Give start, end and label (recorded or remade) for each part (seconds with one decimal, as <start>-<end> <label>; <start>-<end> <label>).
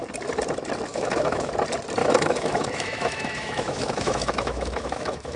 0.0-0.9 recorded; 0.9-1.5 remade; 1.5-2.0 recorded; 2.0-5.4 remade